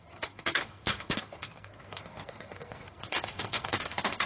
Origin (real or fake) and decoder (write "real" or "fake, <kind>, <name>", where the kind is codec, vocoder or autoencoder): fake, codec, SNAC